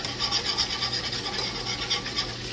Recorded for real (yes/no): yes